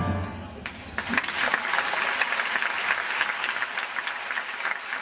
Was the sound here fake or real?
real